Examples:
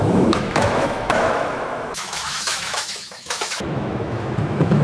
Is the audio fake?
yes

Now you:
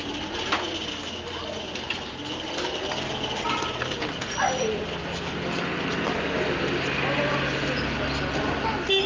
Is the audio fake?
no